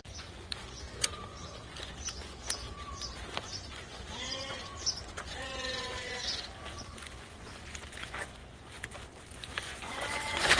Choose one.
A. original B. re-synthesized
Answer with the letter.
B